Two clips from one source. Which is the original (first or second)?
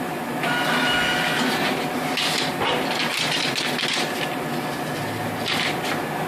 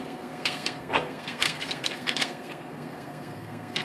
first